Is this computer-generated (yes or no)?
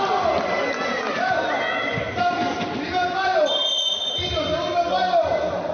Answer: no